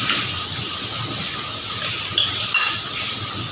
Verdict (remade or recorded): recorded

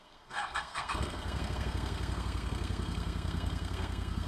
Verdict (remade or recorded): remade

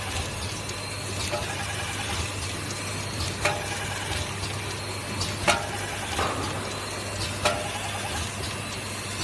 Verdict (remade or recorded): recorded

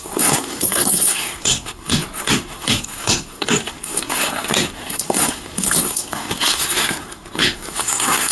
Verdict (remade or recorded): remade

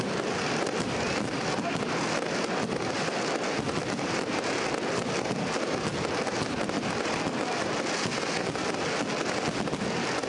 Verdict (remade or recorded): recorded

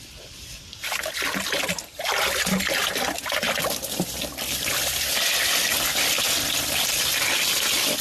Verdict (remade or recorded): recorded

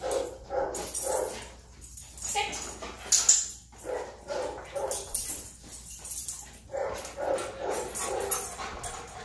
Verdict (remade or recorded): recorded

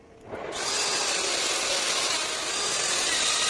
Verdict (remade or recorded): recorded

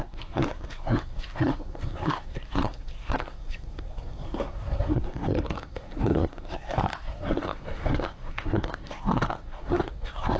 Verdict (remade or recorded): remade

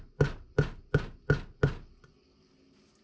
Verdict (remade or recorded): recorded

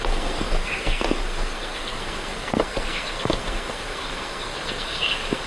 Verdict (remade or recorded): remade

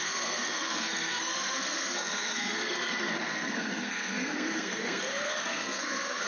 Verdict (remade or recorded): remade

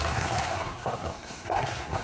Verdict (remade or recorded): remade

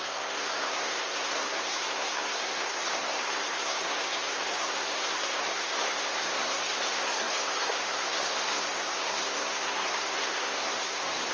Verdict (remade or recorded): remade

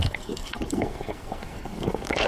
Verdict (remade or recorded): remade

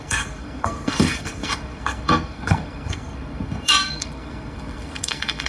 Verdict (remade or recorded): remade